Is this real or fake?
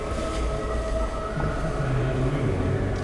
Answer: real